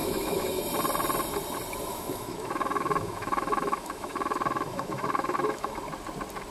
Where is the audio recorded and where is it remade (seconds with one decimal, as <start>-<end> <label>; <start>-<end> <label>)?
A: 0.0-0.6 remade; 0.6-1.9 recorded; 1.9-5.8 remade; 5.8-6.5 recorded